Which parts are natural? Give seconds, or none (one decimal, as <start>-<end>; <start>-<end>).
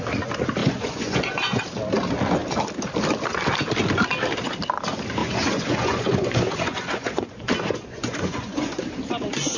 0.0-0.6; 1.6-5.2; 8.8-9.6